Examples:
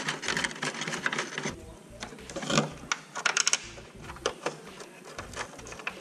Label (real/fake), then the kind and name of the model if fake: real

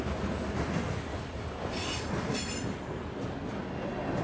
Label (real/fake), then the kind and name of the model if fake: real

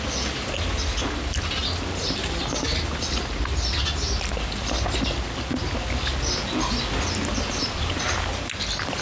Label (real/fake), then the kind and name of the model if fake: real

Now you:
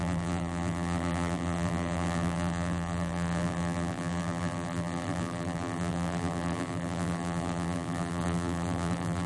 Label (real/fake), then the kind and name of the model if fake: fake, vocoder, BigVGAN v2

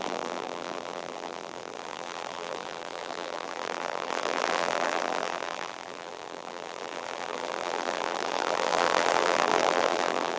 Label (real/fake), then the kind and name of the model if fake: fake, vocoder, BigVGAN v2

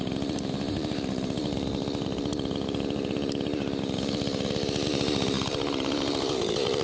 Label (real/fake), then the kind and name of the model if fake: fake, vocoder, BigVGAN v2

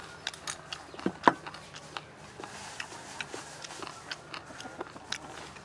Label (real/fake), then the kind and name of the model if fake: real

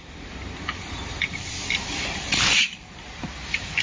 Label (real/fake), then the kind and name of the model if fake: fake, vocoder, BigVGAN v2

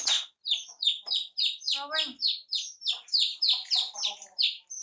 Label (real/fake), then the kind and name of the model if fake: real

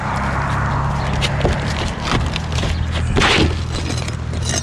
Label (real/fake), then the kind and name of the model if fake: real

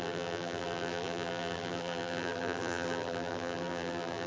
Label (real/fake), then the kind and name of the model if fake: fake, vocoder, BigVGAN v2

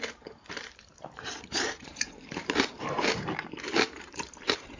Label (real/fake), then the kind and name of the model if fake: fake, vocoder, BigVGAN v2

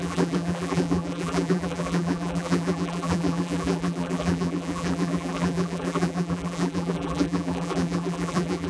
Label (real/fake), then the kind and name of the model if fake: fake, vocoder, BigVGAN v2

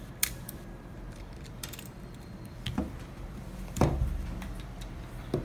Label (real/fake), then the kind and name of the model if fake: fake, vocoder, BigVGAN v2